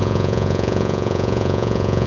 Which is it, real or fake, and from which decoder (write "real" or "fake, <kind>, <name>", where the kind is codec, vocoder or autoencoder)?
fake, vocoder, Vocos